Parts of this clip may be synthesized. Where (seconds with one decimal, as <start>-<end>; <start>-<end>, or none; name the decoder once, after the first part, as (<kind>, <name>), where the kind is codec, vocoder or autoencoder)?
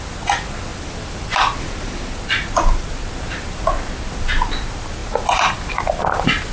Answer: none